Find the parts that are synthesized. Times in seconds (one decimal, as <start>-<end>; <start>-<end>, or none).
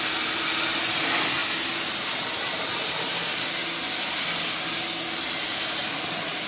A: none